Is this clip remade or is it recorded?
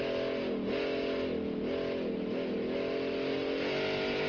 recorded